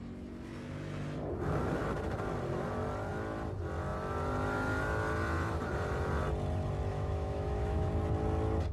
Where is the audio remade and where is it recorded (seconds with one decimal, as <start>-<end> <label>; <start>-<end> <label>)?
0.0-6.9 recorded; 6.9-7.9 remade; 7.9-8.7 recorded

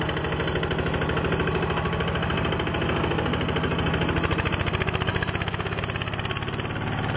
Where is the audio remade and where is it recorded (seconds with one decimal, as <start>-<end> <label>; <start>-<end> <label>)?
0.0-5.1 recorded; 5.1-5.8 remade; 5.8-7.2 recorded

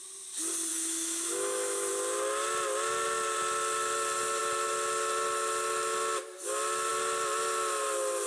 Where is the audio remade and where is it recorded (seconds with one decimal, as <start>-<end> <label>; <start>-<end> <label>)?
0.0-0.7 recorded; 0.7-1.9 remade; 1.9-8.3 recorded